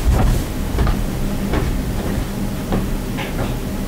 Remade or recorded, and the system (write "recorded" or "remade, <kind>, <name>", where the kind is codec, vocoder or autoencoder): recorded